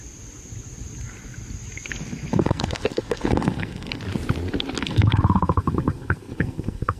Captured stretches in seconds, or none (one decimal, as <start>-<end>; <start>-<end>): 0.0-2.3; 4.0-4.8